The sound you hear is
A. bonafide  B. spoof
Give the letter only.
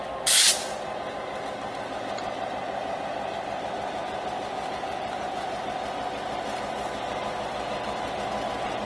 A